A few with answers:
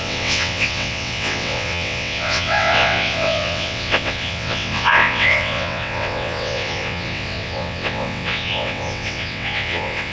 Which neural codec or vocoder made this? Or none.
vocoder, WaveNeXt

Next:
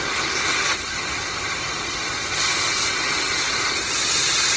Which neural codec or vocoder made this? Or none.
none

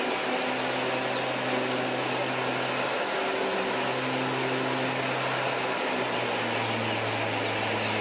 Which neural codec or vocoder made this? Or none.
none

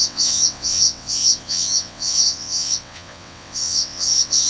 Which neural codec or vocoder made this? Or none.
vocoder, WaveNeXt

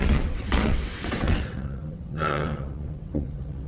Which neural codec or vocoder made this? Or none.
vocoder, WaveNeXt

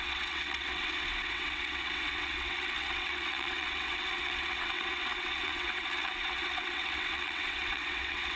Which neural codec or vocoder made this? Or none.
vocoder, WaveNeXt